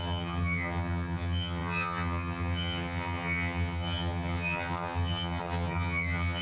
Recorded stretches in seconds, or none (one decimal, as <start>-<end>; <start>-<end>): none